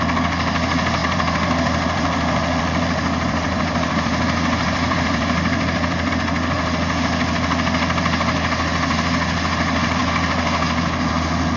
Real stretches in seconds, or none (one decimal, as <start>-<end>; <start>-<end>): 0.0-1.0; 6.1-11.6